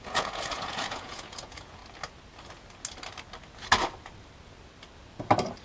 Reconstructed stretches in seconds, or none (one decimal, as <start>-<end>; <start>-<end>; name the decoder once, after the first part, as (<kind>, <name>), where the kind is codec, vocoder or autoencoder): 0.0-1.8 (vocoder, Vocos)